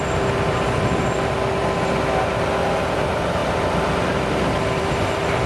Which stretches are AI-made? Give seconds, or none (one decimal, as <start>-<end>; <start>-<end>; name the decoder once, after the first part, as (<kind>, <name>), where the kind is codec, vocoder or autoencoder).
0.0-1.6 (vocoder, BigVGAN v2); 2.8-5.5

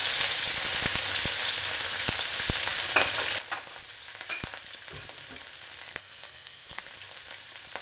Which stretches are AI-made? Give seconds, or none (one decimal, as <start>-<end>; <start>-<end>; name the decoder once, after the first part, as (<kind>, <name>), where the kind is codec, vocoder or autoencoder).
5.9-6.8 (codec, SNAC)

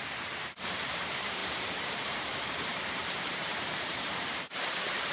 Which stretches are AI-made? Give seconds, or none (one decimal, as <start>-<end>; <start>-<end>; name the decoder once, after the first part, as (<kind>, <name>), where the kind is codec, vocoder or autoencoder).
0.0-5.1 (vocoder, BigVGAN v2)

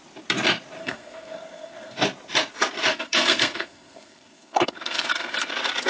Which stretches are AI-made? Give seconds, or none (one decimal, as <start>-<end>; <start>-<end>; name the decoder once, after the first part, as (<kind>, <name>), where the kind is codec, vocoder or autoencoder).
0.8-2.0 (codec, SNAC); 2.9-5.5

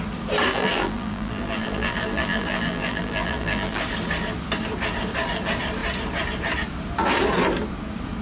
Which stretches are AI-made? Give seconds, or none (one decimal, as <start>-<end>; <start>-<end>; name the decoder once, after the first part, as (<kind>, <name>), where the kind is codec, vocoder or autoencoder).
0.5-3.8 (vocoder, BigVGAN v2)

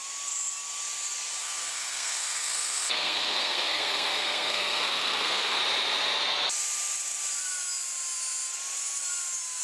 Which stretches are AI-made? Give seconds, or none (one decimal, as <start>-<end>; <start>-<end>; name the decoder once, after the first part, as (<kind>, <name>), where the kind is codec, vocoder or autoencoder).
1.4-5.6 (codec, SNAC)

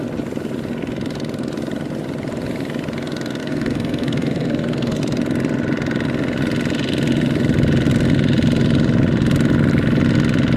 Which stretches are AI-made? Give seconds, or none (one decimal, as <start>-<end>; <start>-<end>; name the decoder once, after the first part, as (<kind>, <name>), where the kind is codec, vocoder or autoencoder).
3.4-5.0 (codec, SNAC)

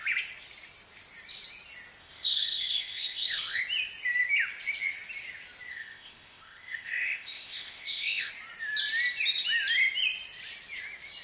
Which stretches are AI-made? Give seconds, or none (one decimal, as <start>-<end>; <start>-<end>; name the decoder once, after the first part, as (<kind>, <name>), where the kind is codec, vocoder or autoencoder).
2.0-3.6 (codec, ZipCodec); 5.7-8.3